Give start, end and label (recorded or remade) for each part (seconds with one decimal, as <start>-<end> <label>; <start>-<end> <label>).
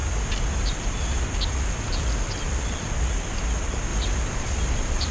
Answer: 0.0-3.1 remade; 3.1-3.9 recorded; 3.9-5.1 remade